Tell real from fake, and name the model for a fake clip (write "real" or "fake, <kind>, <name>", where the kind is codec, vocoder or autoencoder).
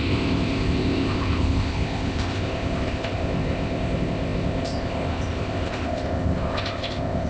fake, codec, ZipCodec